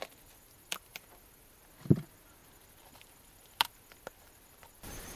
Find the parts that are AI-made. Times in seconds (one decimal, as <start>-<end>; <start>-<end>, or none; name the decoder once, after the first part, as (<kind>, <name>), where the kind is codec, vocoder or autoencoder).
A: none